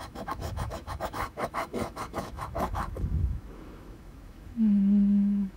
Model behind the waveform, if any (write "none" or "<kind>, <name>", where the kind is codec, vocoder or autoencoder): autoencoder, DAC-VAE